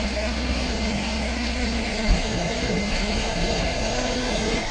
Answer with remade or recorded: remade